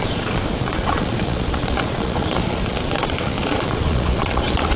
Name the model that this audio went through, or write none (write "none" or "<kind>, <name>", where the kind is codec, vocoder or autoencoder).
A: vocoder, Vocos